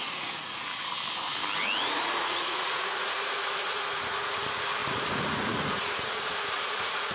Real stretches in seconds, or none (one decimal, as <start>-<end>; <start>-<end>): 0.7-1.8